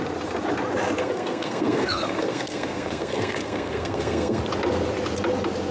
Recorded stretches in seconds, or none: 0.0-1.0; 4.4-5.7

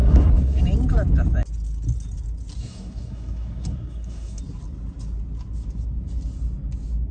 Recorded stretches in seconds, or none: 0.6-2.6; 4.4-7.1

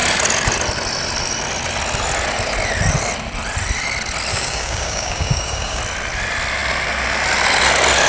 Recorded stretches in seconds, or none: 0.0-4.3; 5.8-8.1